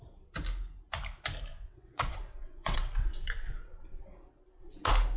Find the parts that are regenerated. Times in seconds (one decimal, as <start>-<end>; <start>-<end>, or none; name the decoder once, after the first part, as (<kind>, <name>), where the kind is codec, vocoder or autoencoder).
1.5-3.6 (vocoder, WaveNeXt)